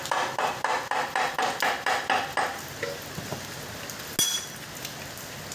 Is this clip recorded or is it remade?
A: recorded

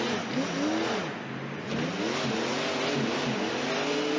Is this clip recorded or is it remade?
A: recorded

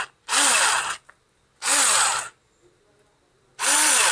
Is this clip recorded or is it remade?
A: recorded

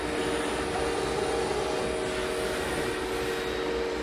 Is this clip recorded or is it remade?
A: recorded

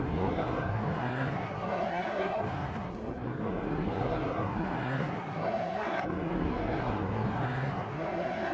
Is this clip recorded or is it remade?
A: remade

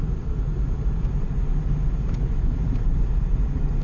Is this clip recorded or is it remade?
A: recorded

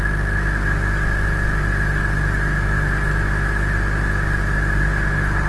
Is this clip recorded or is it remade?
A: recorded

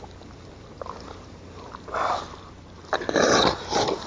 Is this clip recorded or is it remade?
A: recorded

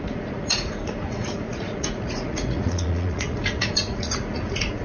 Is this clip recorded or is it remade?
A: remade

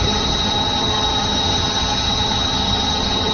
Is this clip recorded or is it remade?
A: remade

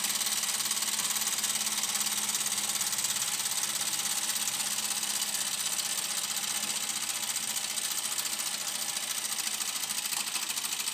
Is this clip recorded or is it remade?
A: recorded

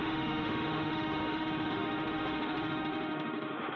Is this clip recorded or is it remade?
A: remade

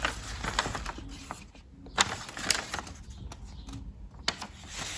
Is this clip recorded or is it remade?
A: recorded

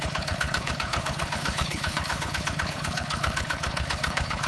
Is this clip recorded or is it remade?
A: remade